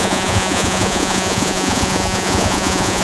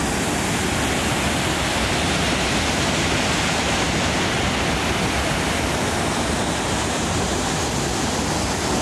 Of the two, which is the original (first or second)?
second